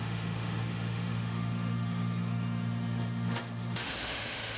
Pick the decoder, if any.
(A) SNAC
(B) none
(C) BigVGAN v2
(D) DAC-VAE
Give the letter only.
D